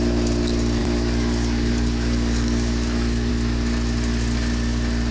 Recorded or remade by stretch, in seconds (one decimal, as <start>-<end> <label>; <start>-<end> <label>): 0.0-0.8 recorded; 0.8-3.3 remade; 3.3-5.1 recorded